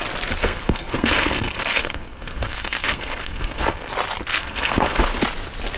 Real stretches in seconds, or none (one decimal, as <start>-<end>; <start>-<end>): 0.0-0.4; 3.9-4.4; 5.2-5.8